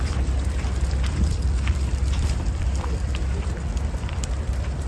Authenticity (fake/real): fake